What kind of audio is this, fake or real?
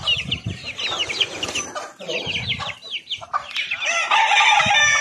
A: fake